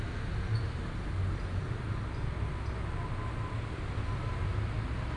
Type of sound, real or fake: real